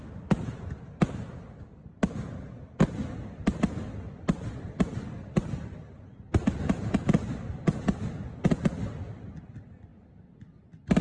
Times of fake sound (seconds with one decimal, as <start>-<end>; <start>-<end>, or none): none